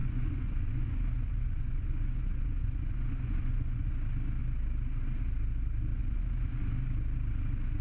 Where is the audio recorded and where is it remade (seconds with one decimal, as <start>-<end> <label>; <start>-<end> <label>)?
0.0-3.9 remade; 3.9-5.9 recorded; 5.9-6.6 remade; 6.6-7.8 recorded

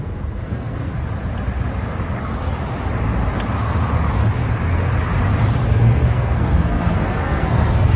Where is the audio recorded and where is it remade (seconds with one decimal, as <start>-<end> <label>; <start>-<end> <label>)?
0.0-0.9 remade; 0.9-5.7 recorded; 5.7-8.0 remade

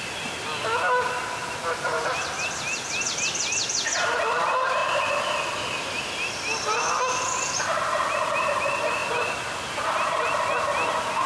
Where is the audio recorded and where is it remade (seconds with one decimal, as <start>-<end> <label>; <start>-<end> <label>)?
0.0-11.3 recorded

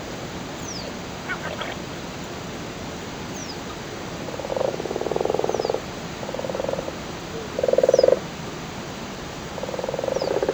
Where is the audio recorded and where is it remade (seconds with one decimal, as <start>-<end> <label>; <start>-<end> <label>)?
0.0-10.5 recorded